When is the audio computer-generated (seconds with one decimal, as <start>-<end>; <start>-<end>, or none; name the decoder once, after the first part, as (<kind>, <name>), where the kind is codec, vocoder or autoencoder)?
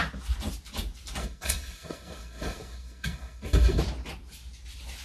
1.2-3.8 (codec, SNAC)